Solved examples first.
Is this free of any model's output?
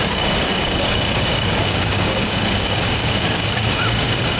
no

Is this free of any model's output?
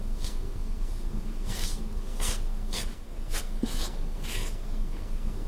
no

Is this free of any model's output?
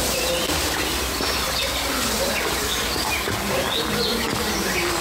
yes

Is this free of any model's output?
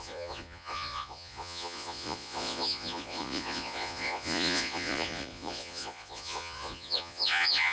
no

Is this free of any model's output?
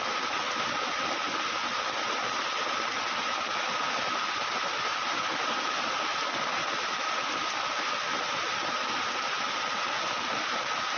yes